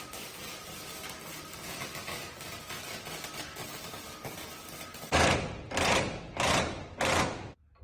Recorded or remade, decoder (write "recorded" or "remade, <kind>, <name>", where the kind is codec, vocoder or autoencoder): recorded